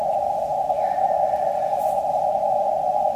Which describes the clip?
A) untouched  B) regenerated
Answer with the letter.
A